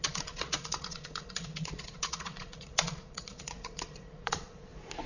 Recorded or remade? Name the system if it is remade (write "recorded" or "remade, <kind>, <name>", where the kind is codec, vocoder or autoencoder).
remade, vocoder, Vocos